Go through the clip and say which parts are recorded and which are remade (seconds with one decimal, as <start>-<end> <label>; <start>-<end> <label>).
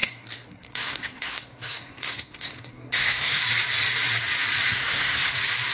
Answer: 0.0-3.4 remade; 3.4-4.8 recorded; 4.8-5.3 remade; 5.3-5.7 recorded